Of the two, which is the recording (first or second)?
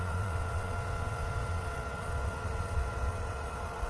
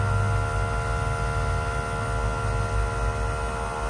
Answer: second